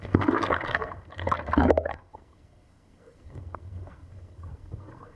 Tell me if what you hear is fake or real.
fake